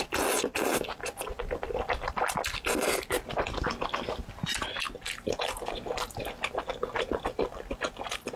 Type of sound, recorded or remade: recorded